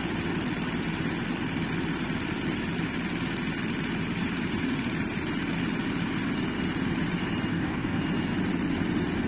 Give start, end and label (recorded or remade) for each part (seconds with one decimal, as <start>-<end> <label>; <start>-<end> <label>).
0.0-7.5 recorded; 7.5-8.0 remade; 8.0-9.3 recorded